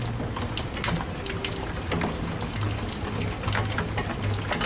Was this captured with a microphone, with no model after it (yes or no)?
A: yes